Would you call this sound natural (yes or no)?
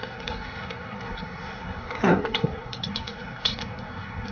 no